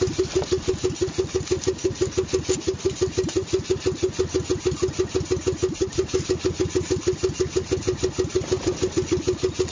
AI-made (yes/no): no